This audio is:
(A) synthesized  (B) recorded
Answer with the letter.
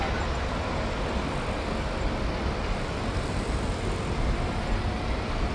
B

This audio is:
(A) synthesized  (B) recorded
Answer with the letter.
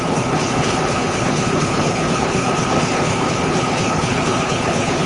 A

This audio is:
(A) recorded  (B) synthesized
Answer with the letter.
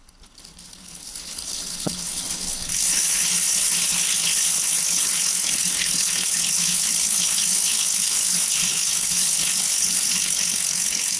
B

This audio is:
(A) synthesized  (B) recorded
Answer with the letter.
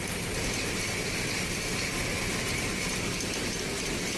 B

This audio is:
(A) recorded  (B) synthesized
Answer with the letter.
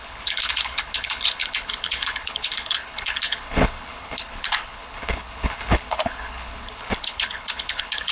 B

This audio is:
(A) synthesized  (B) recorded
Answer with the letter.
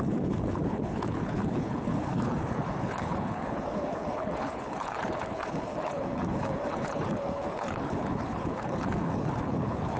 A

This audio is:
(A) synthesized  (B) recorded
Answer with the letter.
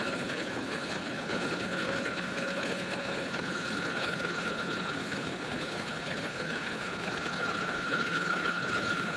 A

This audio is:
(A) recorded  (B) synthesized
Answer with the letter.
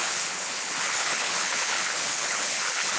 B